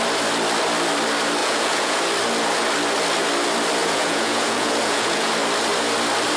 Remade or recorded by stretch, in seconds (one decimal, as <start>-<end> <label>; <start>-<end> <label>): 0.0-1.4 recorded; 1.4-2.0 remade; 2.0-3.8 recorded; 3.8-5.3 remade; 5.3-6.4 recorded